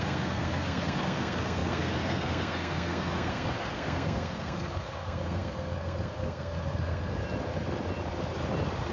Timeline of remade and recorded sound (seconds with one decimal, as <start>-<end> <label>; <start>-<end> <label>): 0.0-7.2 remade; 7.2-8.9 recorded